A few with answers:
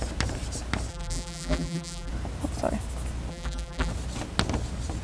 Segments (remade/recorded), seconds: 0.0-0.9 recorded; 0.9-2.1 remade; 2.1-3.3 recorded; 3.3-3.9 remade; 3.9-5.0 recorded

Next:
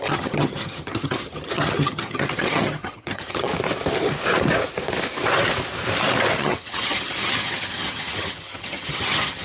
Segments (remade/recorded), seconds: 0.0-3.5 remade; 3.5-6.4 recorded; 6.4-9.4 remade

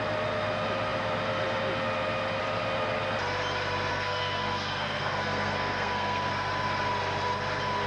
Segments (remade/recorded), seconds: 0.0-3.9 recorded; 3.9-6.3 remade; 6.3-7.9 recorded

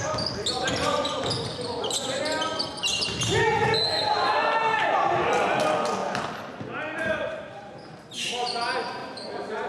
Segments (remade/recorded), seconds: 0.0-9.7 recorded

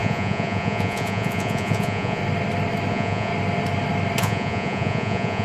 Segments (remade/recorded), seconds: 0.0-2.2 remade; 2.2-2.9 recorded; 2.9-3.3 remade; 3.3-4.2 recorded; 4.2-5.4 remade

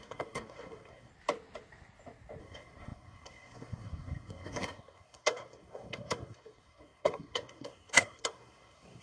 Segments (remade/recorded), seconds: 0.0-1.1 remade; 1.1-2.4 recorded; 2.4-9.0 remade

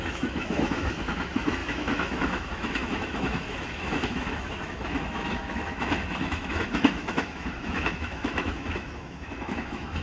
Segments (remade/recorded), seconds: 0.0-10.0 remade

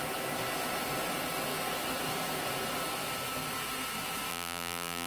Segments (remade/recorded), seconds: 0.0-4.3 recorded; 4.3-5.1 remade